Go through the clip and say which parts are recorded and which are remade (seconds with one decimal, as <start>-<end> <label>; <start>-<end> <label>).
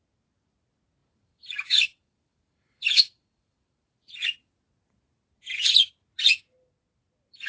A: 0.0-1.0 recorded; 1.0-4.5 remade; 4.5-7.5 recorded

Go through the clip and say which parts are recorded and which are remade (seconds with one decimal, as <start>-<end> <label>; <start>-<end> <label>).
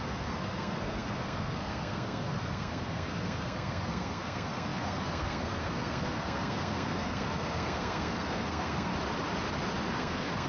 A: 0.0-8.9 remade; 8.9-9.9 recorded; 9.9-10.5 remade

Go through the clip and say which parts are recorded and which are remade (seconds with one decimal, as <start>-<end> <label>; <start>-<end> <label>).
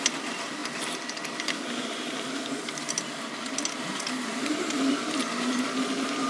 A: 0.0-6.3 remade